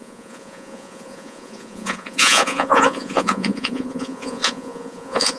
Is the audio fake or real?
fake